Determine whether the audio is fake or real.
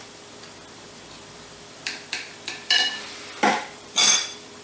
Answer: fake